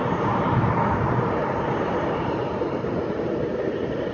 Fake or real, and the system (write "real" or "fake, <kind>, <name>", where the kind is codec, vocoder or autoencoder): fake, vocoder, BigVGAN v2